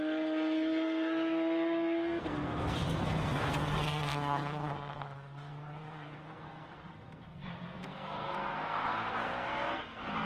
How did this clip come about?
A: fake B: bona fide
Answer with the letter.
A